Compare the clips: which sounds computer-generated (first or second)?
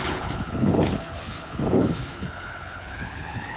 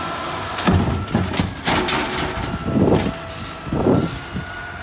first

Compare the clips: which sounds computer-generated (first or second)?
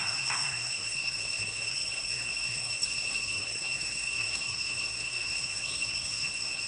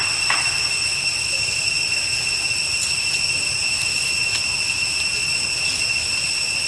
first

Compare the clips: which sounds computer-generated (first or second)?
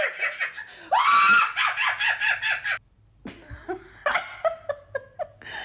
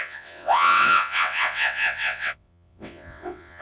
second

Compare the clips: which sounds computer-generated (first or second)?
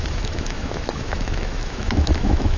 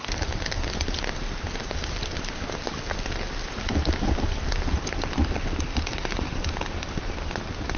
first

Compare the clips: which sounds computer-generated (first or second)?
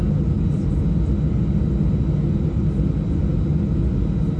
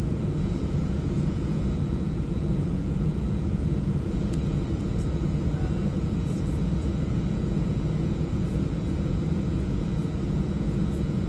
second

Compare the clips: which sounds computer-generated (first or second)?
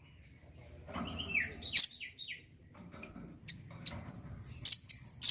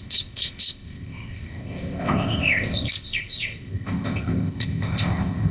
second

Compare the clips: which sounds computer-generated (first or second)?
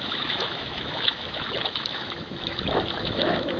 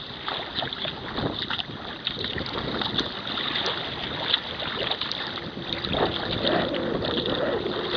first